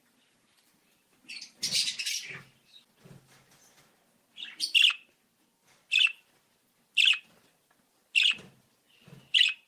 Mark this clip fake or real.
real